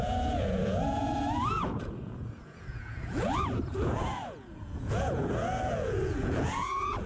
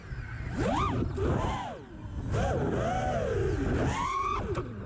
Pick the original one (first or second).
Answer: second